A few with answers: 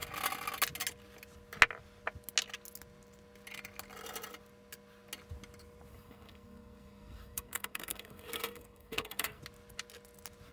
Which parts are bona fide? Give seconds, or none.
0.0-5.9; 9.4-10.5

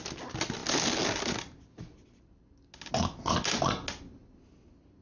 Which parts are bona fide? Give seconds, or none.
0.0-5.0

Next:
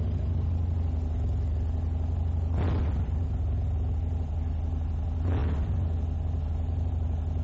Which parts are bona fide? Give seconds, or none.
0.0-7.4

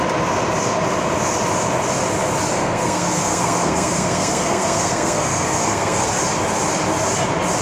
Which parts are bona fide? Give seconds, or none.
0.0-2.5; 6.1-7.6